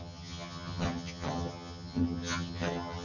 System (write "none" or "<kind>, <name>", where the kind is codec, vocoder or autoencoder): vocoder, HiFi-GAN